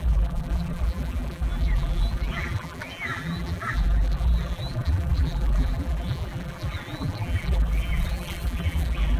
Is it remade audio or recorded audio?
remade